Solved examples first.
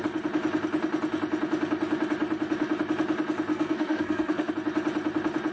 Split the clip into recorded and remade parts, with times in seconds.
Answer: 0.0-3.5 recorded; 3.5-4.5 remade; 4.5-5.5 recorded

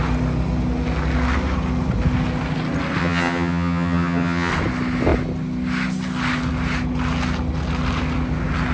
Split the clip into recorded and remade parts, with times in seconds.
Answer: 0.0-3.0 recorded; 3.0-4.5 remade; 4.5-8.7 recorded

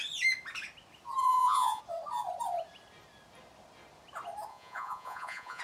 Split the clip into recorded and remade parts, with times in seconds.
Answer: 0.0-1.2 recorded; 1.2-1.8 remade; 1.8-4.5 recorded; 4.5-5.6 remade

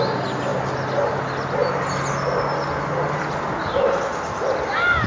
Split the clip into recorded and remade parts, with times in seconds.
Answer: 0.0-5.1 recorded

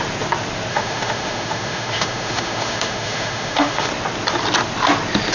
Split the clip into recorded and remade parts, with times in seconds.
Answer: 0.0-0.7 recorded; 0.7-3.9 remade; 3.9-5.3 recorded

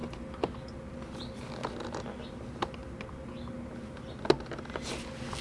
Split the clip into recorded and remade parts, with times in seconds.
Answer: 0.0-5.4 recorded

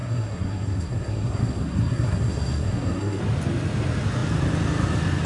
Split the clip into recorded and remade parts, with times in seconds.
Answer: 0.0-3.2 remade; 3.2-5.3 recorded